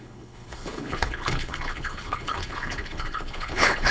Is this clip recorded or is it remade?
remade